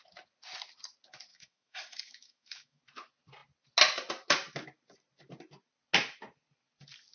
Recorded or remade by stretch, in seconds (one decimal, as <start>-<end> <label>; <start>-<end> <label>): 0.0-1.3 recorded; 1.3-2.8 remade; 2.8-7.1 recorded